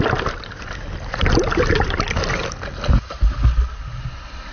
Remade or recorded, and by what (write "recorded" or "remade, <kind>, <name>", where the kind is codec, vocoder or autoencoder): recorded